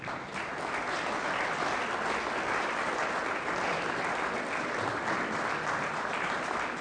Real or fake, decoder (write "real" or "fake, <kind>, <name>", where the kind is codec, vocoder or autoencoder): real